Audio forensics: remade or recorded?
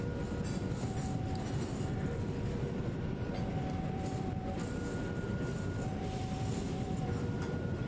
remade